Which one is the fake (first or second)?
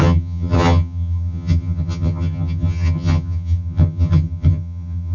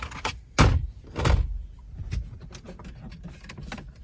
first